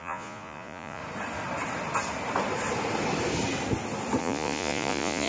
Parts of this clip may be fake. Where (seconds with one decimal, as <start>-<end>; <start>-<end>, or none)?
0.0-1.0; 4.2-5.3